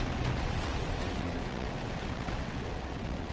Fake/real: fake